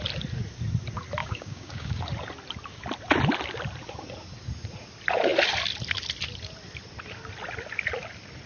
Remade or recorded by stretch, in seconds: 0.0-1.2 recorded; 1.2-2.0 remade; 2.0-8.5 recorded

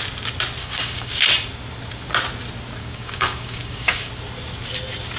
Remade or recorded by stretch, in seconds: 0.0-0.6 recorded; 0.6-1.1 remade; 1.1-2.8 recorded; 2.8-4.1 remade; 4.1-5.2 recorded

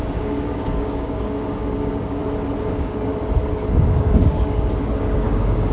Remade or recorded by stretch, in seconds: 0.0-2.2 remade; 2.2-2.7 recorded; 2.7-3.1 remade; 3.1-3.7 recorded; 3.7-5.7 remade

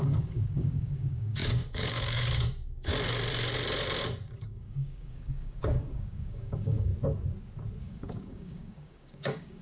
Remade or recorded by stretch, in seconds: 0.0-2.9 remade; 2.9-4.4 recorded; 4.4-6.9 remade; 6.9-7.8 recorded; 7.8-9.6 remade

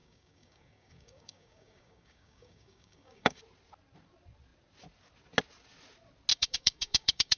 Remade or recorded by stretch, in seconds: 0.0-3.4 remade; 3.4-6.3 recorded; 6.3-7.4 remade

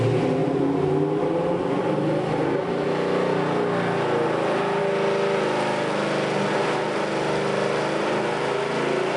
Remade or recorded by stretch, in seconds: 0.0-9.2 recorded

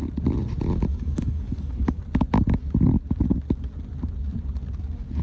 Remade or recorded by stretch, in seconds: 0.0-0.9 recorded; 0.9-2.0 remade; 2.0-5.2 recorded

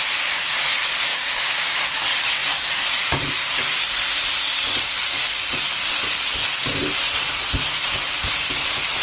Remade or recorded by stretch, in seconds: 0.0-1.1 recorded; 1.1-1.8 remade; 1.8-9.0 recorded